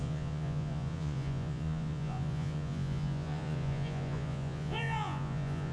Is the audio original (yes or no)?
no